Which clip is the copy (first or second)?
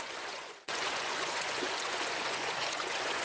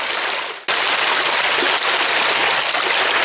first